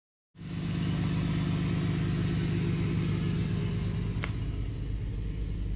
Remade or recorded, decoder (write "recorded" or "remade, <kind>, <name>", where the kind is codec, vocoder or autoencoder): recorded